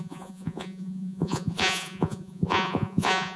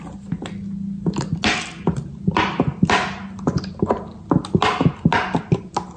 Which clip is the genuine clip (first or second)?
second